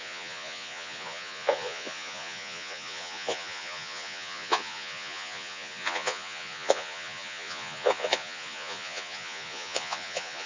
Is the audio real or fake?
fake